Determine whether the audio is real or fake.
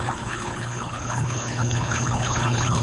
fake